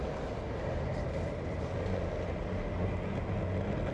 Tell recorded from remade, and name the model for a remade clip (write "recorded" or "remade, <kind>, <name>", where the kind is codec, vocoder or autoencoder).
recorded